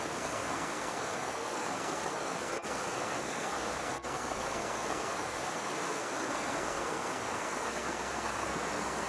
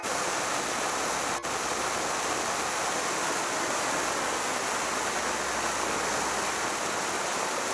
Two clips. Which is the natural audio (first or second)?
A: second